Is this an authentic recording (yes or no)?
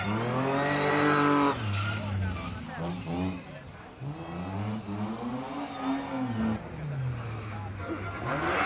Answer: yes